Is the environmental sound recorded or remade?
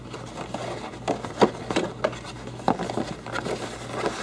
recorded